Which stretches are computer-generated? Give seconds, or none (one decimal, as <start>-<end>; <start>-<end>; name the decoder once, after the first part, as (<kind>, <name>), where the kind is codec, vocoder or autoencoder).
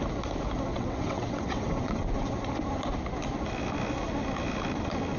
0.7-2.0 (vocoder, WaveNeXt)